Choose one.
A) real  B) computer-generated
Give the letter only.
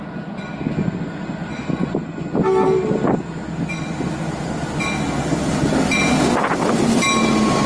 A